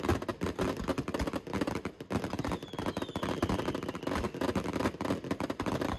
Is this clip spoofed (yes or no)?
no